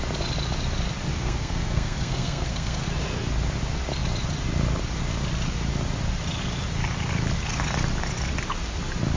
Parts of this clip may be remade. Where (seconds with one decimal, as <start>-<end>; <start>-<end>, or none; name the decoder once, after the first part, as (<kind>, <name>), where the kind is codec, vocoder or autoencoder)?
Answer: 1.1-2.8 (codec, SNAC)